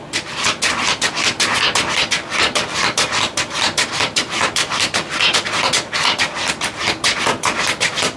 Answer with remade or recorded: remade